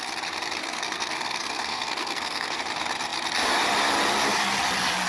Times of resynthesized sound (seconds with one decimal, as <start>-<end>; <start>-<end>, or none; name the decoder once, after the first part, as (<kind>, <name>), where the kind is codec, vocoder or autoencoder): 0.6-2.6 (codec, SNAC)